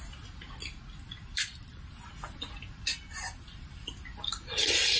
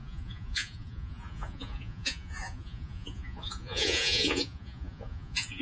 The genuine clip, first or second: first